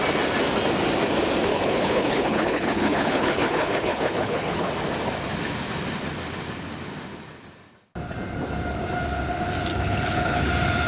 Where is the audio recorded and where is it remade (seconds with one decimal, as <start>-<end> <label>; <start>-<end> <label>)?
0.0-1.5 recorded; 1.5-4.7 remade; 4.7-9.7 recorded; 9.7-10.4 remade; 10.4-10.9 recorded